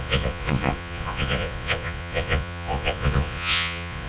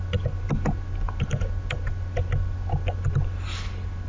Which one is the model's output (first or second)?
first